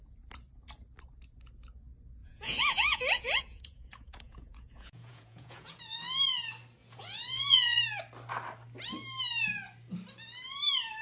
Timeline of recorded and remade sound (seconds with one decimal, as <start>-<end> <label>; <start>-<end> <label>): 0.0-2.2 recorded; 2.2-6.2 remade; 6.2-6.8 recorded; 6.8-7.8 remade; 7.8-11.0 recorded